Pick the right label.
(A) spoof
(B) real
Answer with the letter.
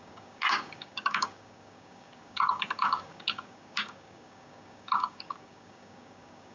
A